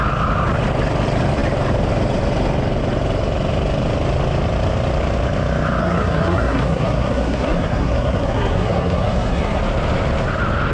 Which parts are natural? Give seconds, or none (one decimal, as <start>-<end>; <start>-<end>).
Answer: 0.0-5.8; 9.6-10.7